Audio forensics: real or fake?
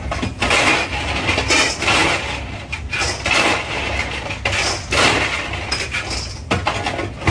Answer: real